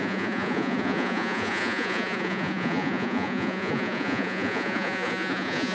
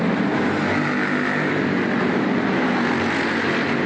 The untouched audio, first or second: second